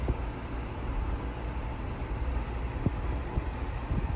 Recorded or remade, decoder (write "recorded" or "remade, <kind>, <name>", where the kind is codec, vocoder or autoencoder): recorded